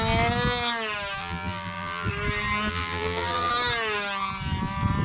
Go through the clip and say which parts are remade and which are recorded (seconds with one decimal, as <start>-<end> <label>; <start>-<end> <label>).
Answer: 0.0-1.2 recorded; 1.2-2.1 remade; 2.1-2.7 recorded; 2.7-3.5 remade; 3.5-5.0 recorded